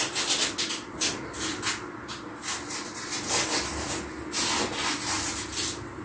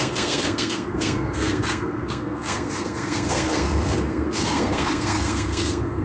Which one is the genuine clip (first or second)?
first